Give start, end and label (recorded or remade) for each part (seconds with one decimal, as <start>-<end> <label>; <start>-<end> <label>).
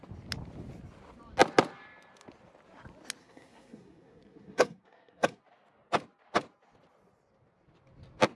0.0-3.2 recorded; 3.2-5.4 remade; 5.4-8.4 recorded